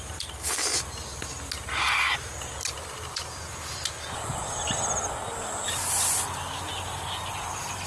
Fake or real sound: real